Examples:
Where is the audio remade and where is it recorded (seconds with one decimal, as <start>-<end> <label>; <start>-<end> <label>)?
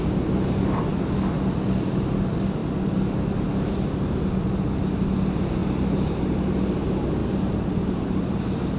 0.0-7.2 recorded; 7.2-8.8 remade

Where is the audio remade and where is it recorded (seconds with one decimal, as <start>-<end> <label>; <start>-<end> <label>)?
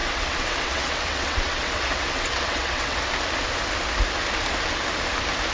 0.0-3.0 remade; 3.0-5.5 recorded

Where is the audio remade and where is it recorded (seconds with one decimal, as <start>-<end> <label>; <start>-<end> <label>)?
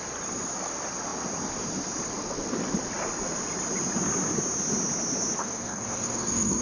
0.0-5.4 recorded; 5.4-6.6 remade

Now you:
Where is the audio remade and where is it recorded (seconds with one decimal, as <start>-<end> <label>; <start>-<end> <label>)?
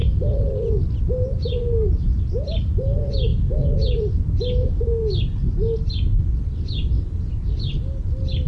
0.0-8.5 recorded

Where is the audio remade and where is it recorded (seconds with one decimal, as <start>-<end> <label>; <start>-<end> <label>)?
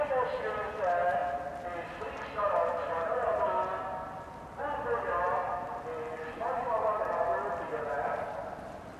0.0-9.0 recorded